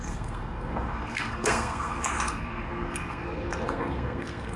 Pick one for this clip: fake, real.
fake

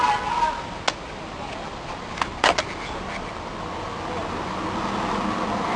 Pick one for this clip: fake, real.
real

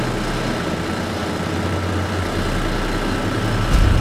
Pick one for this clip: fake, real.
real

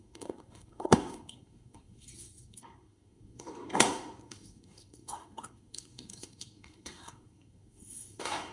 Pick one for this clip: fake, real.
fake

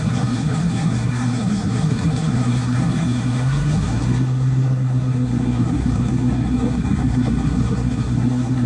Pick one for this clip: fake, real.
fake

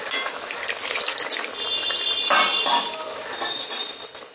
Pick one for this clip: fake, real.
real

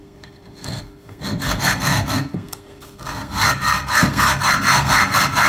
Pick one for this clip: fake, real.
fake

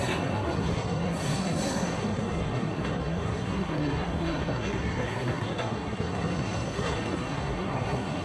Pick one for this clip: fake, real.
fake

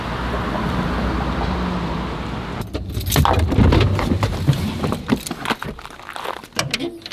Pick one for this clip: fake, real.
real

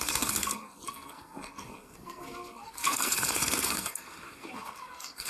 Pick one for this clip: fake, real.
fake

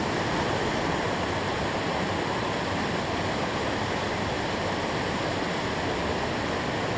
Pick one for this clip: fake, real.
real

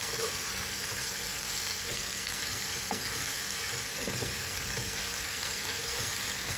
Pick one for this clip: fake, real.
fake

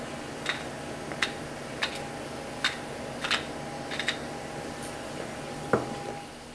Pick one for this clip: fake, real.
real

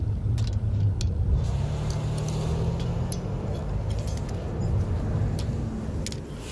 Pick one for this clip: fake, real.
real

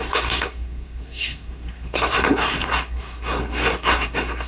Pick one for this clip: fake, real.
fake